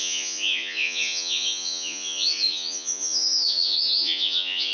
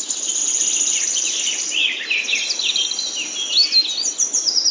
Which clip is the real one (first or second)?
second